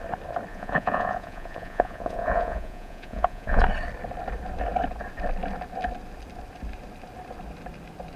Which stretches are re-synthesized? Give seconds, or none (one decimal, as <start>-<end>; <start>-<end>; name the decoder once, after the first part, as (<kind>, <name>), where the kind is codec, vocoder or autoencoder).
0.5-3.6 (vocoder, Vocos)